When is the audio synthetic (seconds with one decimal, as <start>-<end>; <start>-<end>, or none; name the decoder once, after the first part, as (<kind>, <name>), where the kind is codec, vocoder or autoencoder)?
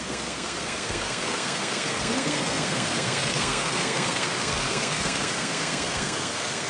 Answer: 0.0-6.7 (codec, SNAC)